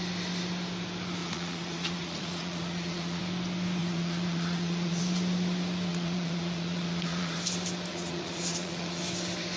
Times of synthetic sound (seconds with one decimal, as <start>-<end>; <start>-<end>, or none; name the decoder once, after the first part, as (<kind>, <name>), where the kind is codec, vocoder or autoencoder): 1.2-3.2 (vocoder, Vocos); 3.8-5.0; 5.9-7.4; 7.9-9.0